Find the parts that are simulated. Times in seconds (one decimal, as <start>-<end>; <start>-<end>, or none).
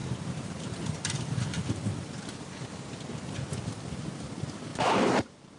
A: 0.0-1.6; 4.7-5.6